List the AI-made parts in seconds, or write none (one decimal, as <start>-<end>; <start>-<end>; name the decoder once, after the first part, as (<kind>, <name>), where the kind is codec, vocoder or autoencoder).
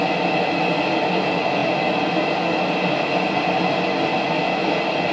none